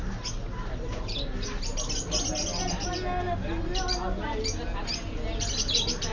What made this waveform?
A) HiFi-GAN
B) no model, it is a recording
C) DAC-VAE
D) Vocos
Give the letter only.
B